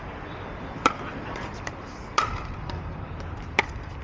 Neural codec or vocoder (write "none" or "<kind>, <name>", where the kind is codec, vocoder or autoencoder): vocoder, BigVGAN v2